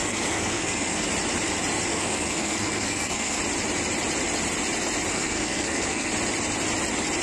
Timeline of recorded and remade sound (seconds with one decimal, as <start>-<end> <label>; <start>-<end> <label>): 0.0-1.1 remade; 1.1-1.9 recorded; 1.9-3.4 remade; 3.4-5.1 recorded; 5.1-6.1 remade; 6.1-7.2 recorded